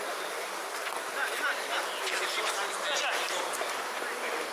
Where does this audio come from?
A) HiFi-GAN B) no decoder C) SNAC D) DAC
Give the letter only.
B